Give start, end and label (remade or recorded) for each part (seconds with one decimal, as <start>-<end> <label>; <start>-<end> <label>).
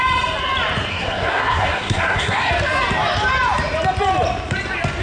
0.0-0.9 recorded; 0.9-2.5 remade; 2.5-5.0 recorded